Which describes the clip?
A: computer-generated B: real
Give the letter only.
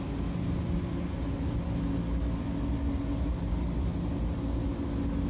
B